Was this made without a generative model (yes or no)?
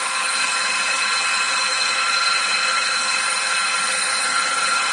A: no